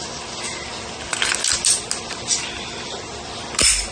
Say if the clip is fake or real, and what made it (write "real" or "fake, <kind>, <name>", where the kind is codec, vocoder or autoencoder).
real